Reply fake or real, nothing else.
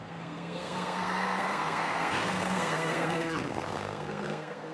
fake